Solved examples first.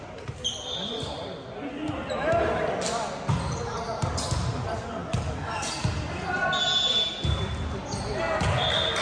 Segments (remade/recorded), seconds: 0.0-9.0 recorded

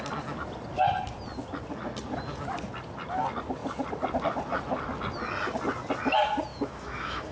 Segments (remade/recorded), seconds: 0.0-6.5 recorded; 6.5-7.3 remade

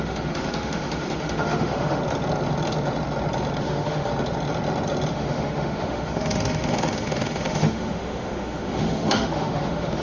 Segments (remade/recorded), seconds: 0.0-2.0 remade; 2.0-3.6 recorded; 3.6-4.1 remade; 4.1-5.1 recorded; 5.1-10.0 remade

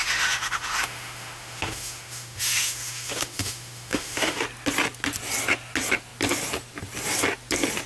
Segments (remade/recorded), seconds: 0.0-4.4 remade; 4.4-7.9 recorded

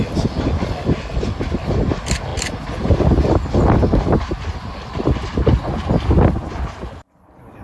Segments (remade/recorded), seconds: 0.0-7.6 recorded

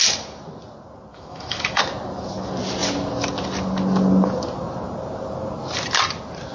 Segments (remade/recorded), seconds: 0.0-1.1 recorded; 1.1-1.8 remade; 1.8-6.5 recorded

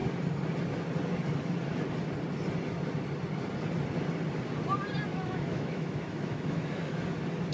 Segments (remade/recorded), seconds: 0.0-5.1 recorded; 5.1-7.0 remade; 7.0-7.5 recorded

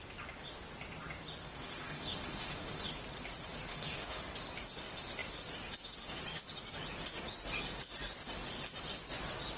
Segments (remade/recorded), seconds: 0.0-1.6 recorded; 1.6-2.9 remade; 2.9-3.7 recorded; 3.7-4.2 remade; 4.2-9.6 recorded